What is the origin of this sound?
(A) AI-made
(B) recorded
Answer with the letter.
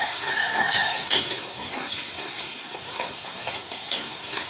A